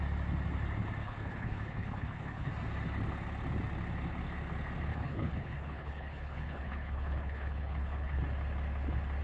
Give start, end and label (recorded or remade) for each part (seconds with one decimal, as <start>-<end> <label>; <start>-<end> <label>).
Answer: 0.0-1.0 recorded; 1.0-2.5 remade; 2.5-4.9 recorded; 4.9-8.2 remade; 8.2-9.2 recorded